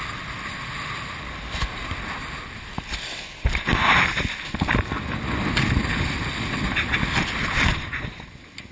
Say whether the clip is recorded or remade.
recorded